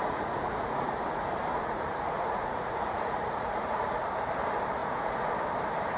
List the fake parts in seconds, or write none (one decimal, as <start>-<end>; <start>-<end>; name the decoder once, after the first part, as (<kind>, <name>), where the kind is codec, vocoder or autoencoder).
0.0-0.9 (vocoder, Vocos); 1.5-4.0; 4.8-5.3